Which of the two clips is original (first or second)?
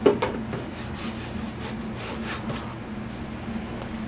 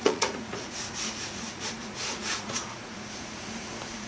first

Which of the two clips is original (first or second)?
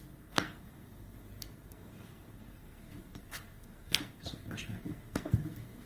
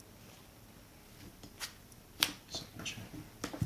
second